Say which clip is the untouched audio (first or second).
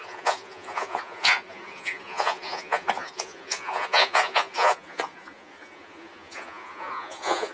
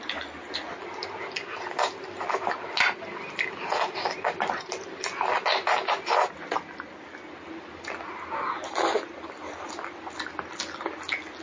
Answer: second